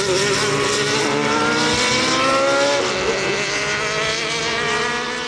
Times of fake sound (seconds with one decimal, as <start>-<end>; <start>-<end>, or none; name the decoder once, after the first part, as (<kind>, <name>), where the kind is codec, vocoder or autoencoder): none